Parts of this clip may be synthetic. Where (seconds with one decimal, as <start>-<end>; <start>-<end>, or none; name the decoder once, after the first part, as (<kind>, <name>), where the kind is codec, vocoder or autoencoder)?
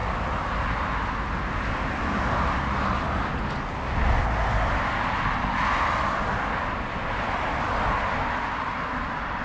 none